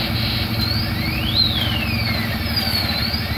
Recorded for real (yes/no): yes